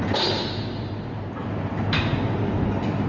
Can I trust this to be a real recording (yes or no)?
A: yes